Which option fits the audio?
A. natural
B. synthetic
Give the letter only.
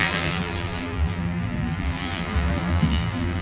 B